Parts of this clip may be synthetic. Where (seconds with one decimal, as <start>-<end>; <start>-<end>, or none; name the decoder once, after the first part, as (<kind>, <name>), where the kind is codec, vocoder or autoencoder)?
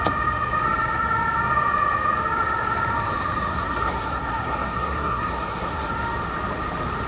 3.5-5.9 (codec, SNAC)